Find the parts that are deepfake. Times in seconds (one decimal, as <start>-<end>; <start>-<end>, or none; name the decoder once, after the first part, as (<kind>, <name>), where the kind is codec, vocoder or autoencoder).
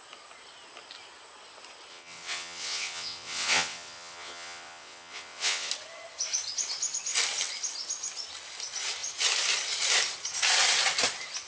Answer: 1.9-5.7 (vocoder, WaveNeXt)